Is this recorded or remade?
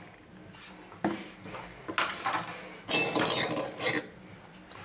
recorded